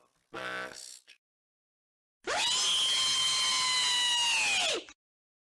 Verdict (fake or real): real